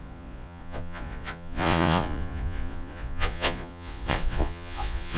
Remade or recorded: remade